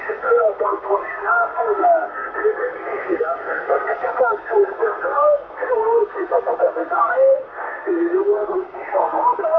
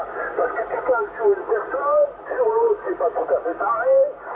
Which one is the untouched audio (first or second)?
second